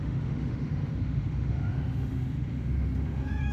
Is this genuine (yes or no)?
no